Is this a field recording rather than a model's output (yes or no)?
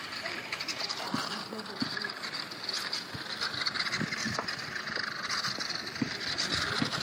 yes